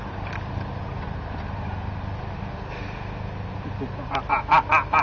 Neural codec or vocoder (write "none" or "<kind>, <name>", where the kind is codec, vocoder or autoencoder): none